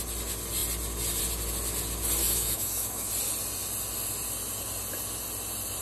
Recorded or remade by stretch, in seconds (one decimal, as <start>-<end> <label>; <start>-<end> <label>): 0.0-2.2 recorded; 2.2-3.1 remade; 3.1-5.8 recorded